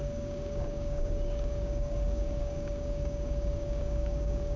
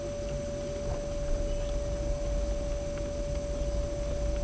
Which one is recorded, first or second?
second